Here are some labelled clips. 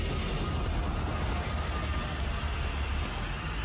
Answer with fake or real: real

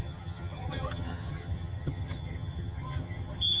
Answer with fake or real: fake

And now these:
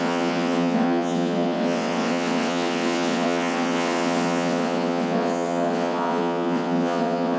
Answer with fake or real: fake